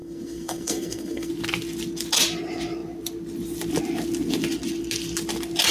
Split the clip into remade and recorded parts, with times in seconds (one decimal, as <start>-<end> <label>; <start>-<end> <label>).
0.0-1.3 remade; 1.3-5.7 recorded